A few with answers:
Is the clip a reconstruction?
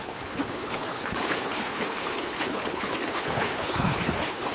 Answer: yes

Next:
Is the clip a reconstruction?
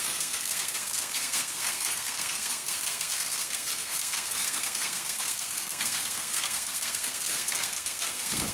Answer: yes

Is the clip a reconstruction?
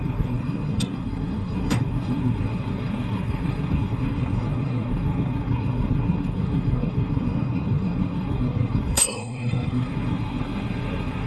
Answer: yes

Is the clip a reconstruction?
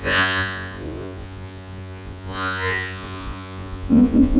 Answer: yes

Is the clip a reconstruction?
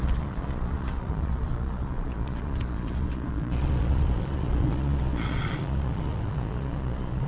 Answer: yes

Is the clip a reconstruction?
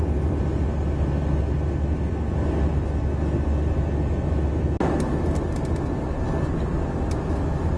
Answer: no